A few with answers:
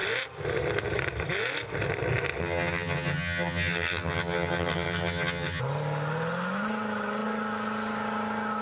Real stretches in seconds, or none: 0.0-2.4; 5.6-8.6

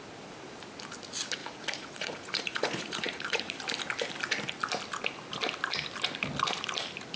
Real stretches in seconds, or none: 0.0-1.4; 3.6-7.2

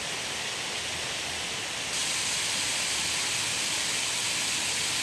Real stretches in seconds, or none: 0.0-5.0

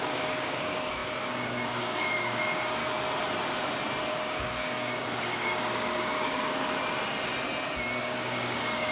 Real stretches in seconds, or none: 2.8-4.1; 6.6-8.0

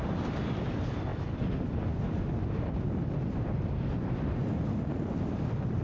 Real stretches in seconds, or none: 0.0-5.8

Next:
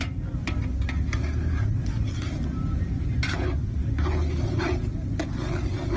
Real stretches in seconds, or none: 0.0-6.0